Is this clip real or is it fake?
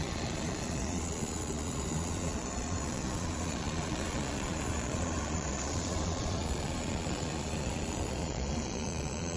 fake